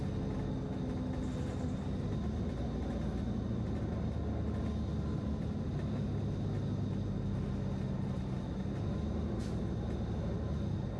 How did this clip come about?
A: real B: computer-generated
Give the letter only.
A